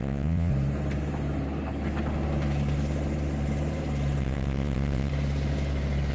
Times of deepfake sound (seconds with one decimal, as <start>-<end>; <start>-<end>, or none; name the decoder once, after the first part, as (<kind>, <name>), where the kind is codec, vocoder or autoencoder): 0.0-0.5 (vocoder, Vocos); 4.2-5.1